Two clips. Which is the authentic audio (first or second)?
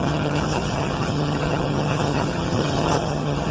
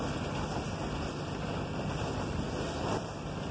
second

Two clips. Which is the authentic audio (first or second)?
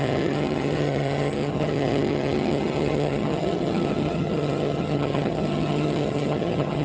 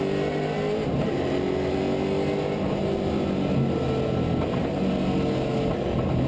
second